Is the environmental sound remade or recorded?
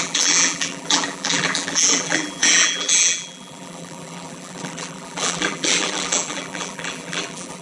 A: remade